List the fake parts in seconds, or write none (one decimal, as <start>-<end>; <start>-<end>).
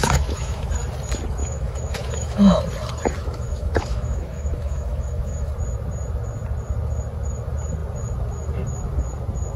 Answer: 0.0-0.7; 1.4-2.6; 3.2-5.5